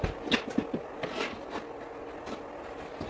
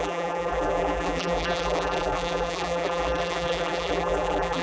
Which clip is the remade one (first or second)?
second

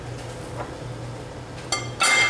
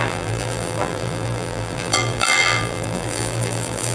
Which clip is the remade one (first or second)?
second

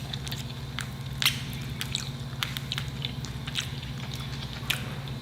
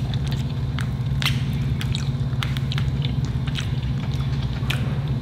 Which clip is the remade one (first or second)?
second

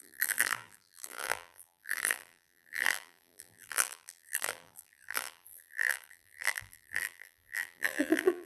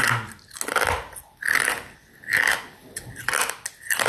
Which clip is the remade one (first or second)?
first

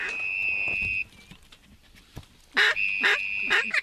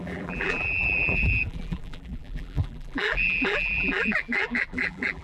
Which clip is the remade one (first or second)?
second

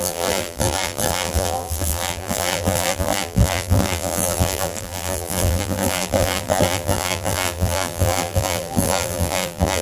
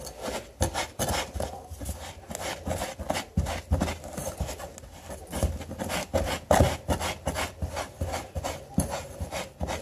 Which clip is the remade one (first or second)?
first